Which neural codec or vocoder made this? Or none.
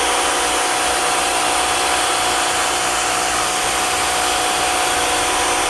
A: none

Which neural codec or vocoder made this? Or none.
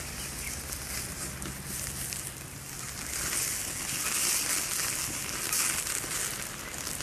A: none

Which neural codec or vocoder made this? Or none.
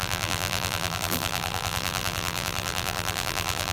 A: vocoder, BigVGAN v2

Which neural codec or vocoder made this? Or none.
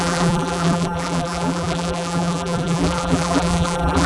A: vocoder, BigVGAN v2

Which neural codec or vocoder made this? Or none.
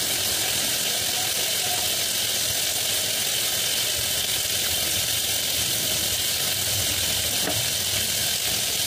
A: none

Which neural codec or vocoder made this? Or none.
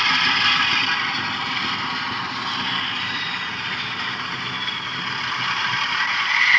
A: vocoder, BigVGAN v2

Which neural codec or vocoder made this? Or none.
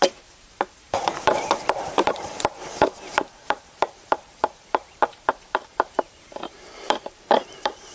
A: vocoder, BigVGAN v2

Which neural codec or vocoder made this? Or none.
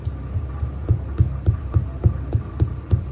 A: vocoder, BigVGAN v2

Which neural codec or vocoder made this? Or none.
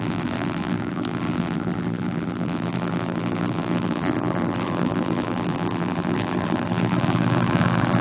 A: vocoder, BigVGAN v2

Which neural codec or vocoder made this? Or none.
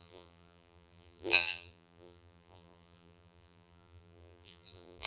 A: vocoder, BigVGAN v2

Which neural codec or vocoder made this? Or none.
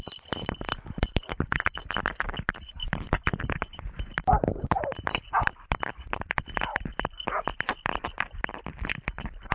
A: none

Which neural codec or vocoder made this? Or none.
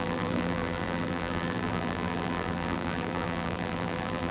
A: vocoder, BigVGAN v2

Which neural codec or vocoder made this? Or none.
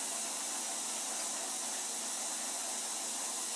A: none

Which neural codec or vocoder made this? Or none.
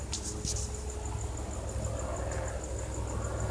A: none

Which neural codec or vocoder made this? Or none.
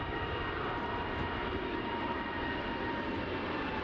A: none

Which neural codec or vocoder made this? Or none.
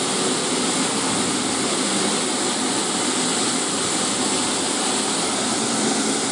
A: none